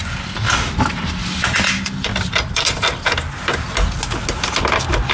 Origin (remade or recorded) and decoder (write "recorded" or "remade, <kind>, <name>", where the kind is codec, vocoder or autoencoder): recorded